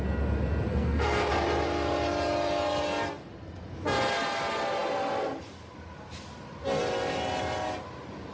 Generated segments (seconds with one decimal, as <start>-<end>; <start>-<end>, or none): 0.7-1.3